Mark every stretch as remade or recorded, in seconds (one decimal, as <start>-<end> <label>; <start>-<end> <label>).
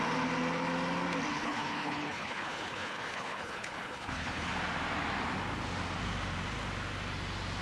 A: 0.0-1.3 recorded; 1.3-4.5 remade; 4.5-7.6 recorded